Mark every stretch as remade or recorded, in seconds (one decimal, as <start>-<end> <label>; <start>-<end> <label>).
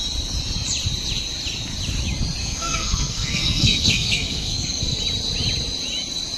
0.0-2.4 recorded; 2.4-5.0 remade; 5.0-6.4 recorded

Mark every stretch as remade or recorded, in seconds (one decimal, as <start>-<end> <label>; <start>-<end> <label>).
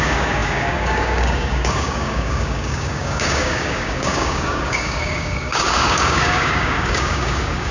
0.0-7.7 remade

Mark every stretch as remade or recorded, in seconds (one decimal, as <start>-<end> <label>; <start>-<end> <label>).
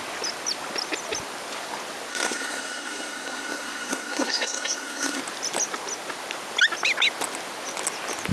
0.0-2.1 recorded; 2.1-5.2 remade; 5.2-8.3 recorded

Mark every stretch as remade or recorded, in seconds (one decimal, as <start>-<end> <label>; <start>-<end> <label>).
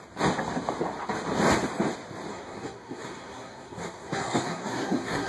0.0-2.3 recorded; 2.3-5.3 remade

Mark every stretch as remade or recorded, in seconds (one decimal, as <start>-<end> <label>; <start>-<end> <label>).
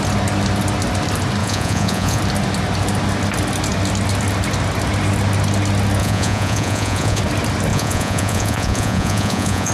0.0-1.4 recorded; 1.4-2.2 remade; 2.2-6.0 recorded; 6.0-7.2 remade; 7.2-7.7 recorded; 7.7-9.7 remade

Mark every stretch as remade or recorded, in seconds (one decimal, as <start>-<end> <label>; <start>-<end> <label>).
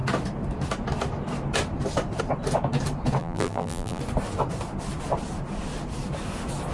0.0-3.2 recorded; 3.2-4.0 remade; 4.0-6.7 recorded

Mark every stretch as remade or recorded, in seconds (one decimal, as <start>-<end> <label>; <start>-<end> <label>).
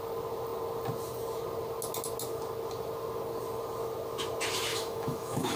0.0-4.7 recorded; 4.7-5.6 remade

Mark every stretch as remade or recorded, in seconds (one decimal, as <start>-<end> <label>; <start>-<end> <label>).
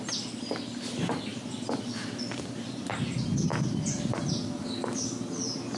0.0-1.3 recorded; 1.3-2.9 remade; 2.9-5.8 recorded